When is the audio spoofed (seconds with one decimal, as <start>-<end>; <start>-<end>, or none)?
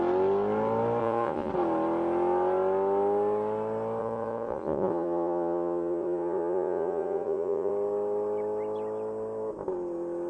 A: 1.0-1.5; 4.0-7.7